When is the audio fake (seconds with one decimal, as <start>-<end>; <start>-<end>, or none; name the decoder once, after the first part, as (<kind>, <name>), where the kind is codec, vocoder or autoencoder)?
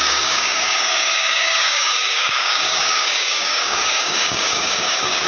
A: 0.0-5.3 (codec, DAC)